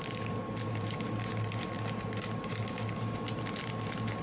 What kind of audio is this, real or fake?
real